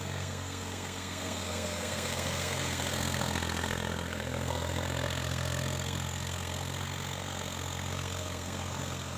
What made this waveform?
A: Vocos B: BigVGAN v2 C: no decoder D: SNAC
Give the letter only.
D